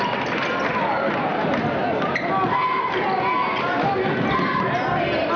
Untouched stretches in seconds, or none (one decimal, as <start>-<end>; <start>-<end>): 0.0-5.4